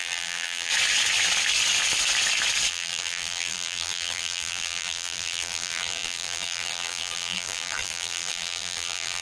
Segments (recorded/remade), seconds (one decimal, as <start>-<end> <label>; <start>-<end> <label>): 0.0-0.7 remade; 0.7-2.7 recorded; 2.7-9.2 remade